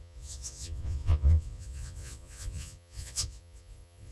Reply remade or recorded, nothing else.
remade